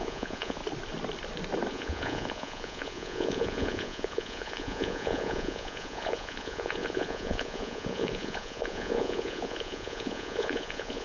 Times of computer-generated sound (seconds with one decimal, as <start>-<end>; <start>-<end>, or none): 0.0-0.6; 1.7-11.0